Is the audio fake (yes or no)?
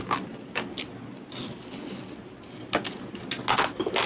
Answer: no